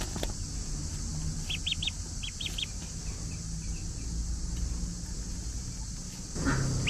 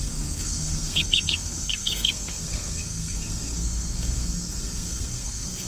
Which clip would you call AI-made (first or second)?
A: second